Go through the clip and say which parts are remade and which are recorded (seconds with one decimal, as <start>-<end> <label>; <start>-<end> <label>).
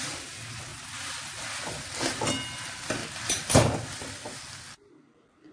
0.0-5.5 recorded